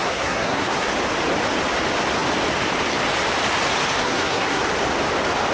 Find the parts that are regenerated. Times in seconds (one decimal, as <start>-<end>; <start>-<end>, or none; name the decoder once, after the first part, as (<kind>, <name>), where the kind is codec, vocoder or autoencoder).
0.0-0.9 (codec, SNAC); 4.0-4.6